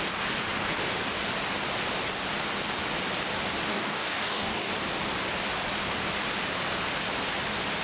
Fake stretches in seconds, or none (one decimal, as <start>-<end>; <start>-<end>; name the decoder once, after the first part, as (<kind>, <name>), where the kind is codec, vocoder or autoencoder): 3.7-4.7 (codec, DAC)